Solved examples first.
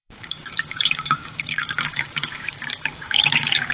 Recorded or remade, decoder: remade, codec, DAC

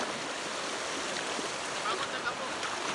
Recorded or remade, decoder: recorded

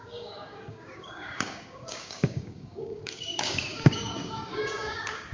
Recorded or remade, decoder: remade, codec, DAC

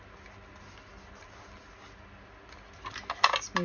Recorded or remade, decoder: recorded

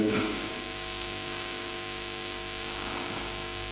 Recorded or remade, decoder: remade, codec, DAC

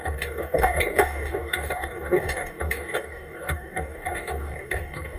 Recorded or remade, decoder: remade, codec, DAC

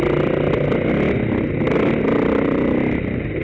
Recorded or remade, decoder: recorded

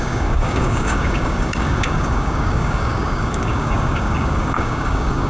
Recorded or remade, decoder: remade, codec, DAC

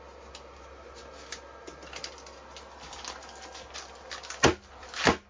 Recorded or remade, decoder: recorded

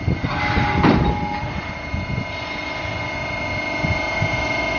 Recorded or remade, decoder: recorded